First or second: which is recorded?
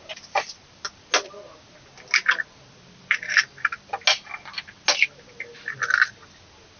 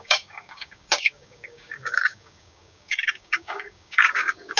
first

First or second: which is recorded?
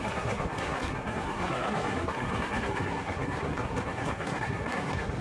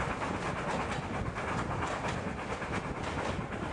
second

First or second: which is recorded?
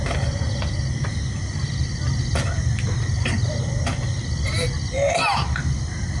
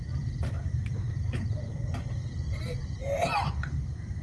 first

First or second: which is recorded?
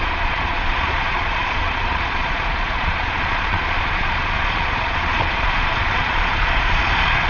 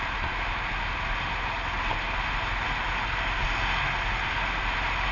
second